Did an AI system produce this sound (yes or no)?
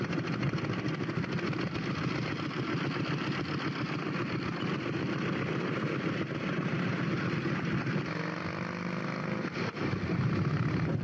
no